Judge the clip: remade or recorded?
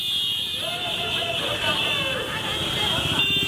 recorded